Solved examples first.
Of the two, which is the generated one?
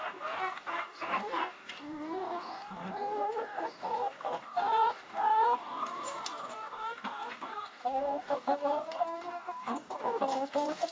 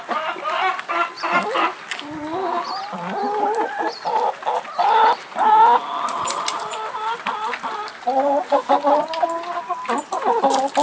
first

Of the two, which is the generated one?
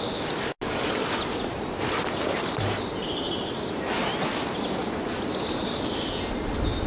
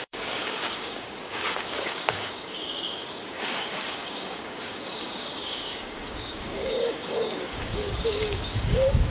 second